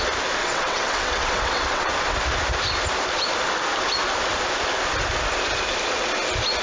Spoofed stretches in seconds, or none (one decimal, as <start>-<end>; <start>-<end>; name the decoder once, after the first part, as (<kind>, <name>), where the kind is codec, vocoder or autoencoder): 0.4-1.9 (vocoder, WaveNeXt)